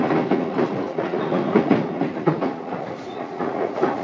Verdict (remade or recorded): remade